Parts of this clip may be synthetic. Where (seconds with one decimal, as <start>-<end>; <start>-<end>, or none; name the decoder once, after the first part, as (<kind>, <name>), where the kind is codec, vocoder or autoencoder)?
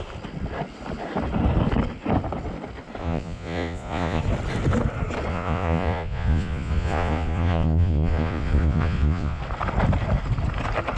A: 3.0-4.2 (vocoder, Vocos); 5.3-9.4